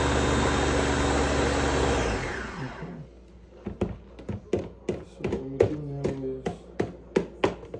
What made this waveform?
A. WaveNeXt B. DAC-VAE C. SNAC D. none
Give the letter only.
D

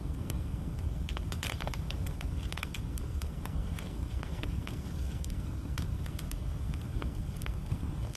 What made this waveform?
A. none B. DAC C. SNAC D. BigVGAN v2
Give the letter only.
C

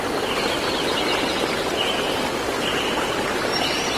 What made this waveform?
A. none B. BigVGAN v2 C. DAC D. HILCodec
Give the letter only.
A